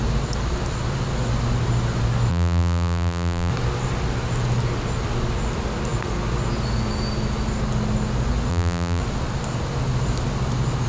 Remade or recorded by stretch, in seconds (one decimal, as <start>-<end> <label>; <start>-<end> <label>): 0.0-2.3 recorded; 2.3-3.5 remade; 3.5-8.5 recorded; 8.5-9.0 remade; 9.0-10.9 recorded